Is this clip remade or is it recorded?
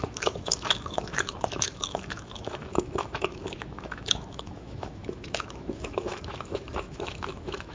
remade